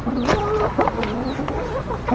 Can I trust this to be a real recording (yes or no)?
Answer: yes